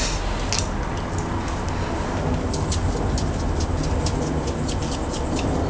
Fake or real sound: real